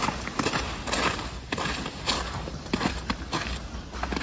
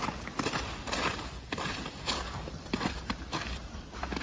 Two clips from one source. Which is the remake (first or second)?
second